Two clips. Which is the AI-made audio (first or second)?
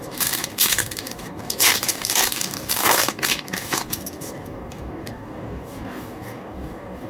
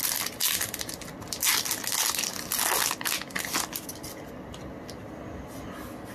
first